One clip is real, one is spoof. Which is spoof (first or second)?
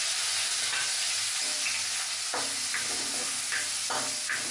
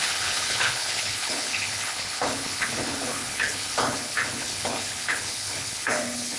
second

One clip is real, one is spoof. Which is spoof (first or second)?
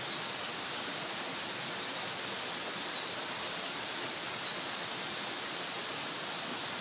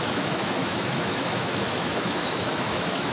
second